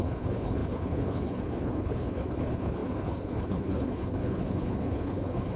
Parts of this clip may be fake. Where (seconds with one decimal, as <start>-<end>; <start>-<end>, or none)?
0.0-5.6